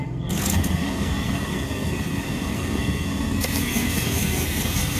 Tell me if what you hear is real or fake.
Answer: fake